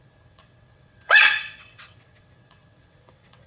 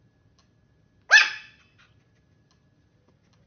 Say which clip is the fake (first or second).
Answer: first